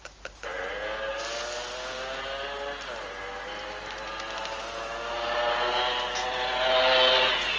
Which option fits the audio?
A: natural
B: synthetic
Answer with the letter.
A